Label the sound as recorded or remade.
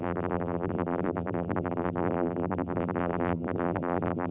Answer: remade